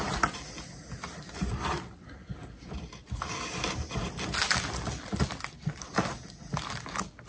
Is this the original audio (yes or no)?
yes